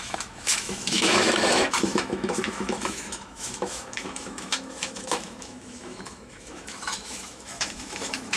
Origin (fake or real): fake